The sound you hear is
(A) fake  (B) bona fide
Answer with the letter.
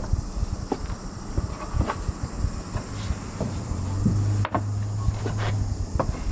B